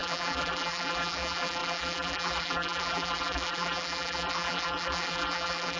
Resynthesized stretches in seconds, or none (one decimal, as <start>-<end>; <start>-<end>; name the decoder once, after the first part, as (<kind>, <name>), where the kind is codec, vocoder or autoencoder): 0.0-5.8 (vocoder, BigVGAN v2)